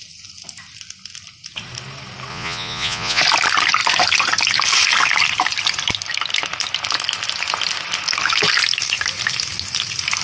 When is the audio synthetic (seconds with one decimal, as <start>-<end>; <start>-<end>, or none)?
2.3-3.2